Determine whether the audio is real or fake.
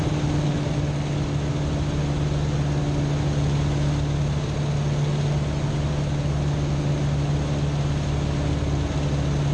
real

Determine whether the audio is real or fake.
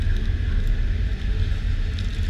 real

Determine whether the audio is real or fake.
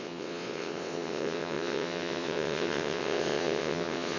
fake